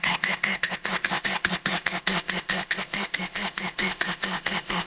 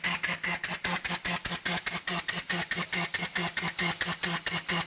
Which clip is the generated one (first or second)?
first